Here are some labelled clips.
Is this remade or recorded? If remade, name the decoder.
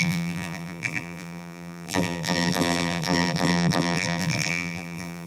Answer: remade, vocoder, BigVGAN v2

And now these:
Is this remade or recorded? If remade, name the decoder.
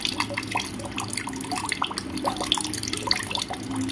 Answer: recorded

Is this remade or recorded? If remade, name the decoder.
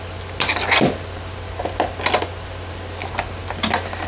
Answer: recorded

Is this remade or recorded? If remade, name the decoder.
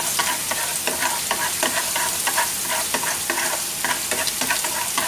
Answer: recorded